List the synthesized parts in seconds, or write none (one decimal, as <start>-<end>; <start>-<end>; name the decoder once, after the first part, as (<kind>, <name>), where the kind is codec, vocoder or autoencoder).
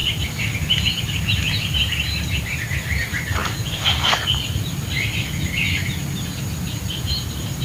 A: 1.0-3.4 (vocoder, BigVGAN v2); 7.0-7.6